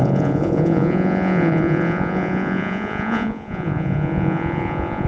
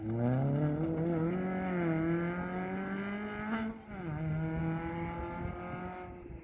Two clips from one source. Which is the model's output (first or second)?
first